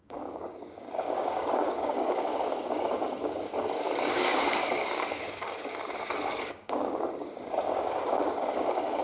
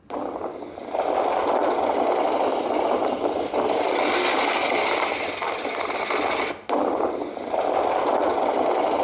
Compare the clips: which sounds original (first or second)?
second